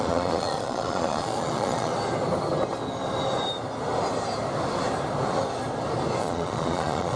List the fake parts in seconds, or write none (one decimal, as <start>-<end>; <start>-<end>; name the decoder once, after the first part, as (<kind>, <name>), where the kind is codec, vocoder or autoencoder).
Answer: 0.0-1.9 (vocoder, Vocos); 6.2-7.2